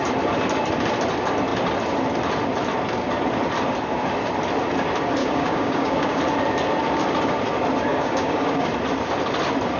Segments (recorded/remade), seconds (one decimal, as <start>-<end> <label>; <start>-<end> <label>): 0.0-5.2 recorded; 5.2-6.2 remade; 6.2-7.9 recorded; 7.9-8.7 remade; 8.7-9.8 recorded